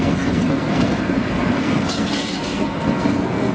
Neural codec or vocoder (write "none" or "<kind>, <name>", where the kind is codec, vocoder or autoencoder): codec, SNAC